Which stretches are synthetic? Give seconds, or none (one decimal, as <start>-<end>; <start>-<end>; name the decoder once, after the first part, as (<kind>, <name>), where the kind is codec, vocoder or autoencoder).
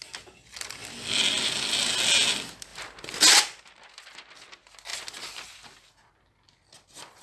none